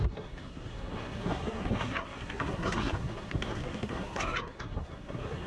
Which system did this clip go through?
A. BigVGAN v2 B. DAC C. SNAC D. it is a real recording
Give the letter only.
C